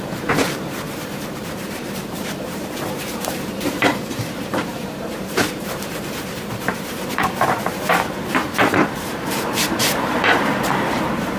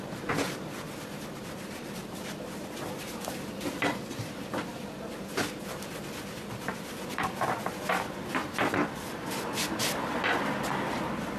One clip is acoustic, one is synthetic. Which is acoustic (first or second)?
second